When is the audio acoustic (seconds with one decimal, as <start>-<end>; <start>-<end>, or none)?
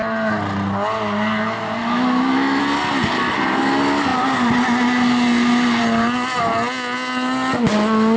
0.0-1.8; 2.6-8.2